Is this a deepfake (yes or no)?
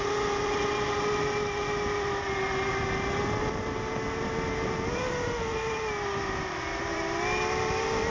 no